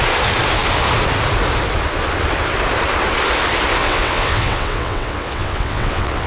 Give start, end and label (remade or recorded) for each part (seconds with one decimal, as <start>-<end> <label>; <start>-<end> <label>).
0.0-3.8 recorded; 3.8-6.3 remade